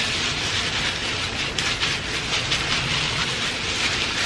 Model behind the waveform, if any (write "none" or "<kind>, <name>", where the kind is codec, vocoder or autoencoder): none